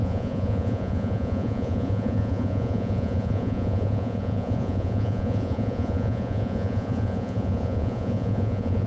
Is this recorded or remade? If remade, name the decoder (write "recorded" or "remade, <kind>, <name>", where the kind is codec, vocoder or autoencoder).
remade, vocoder, Vocos